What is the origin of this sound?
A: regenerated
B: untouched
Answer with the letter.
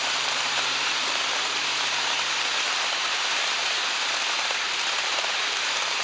A